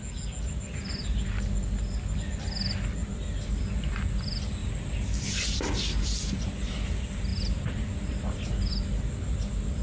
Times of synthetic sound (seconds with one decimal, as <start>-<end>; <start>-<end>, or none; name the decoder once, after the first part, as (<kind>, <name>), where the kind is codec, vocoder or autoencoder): none